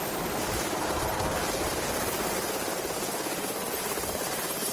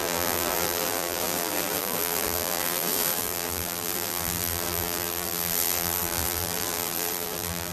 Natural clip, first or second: first